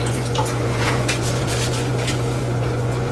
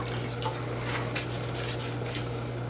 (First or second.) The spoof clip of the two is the first